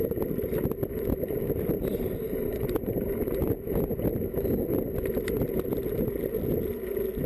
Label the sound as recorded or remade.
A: recorded